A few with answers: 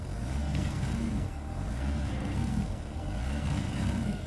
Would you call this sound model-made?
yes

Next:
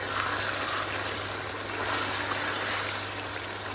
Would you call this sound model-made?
no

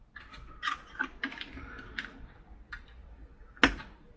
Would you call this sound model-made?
no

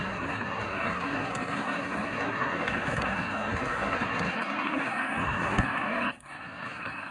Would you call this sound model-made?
yes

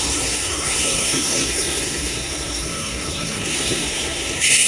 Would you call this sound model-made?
yes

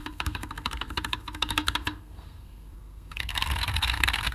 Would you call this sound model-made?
yes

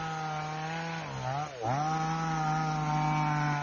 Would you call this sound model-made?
no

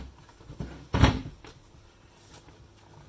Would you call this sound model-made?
no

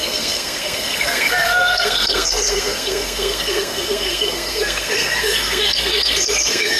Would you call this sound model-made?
yes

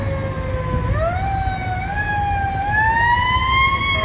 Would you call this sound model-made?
no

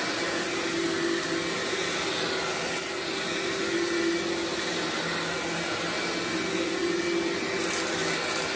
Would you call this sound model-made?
no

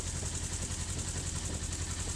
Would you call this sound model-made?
no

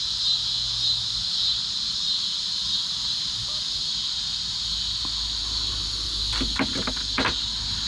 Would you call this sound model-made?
no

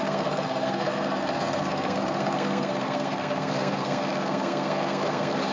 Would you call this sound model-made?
yes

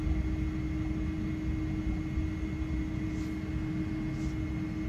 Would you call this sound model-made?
no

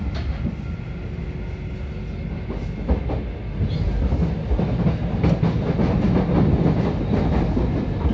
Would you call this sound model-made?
no